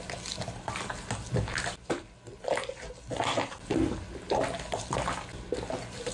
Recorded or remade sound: recorded